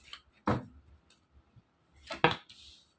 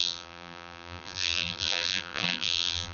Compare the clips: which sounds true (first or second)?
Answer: first